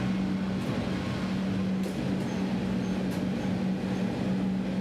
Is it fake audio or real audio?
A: real